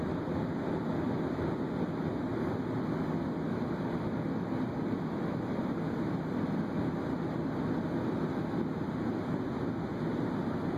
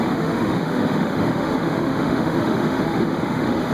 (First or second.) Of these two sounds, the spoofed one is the second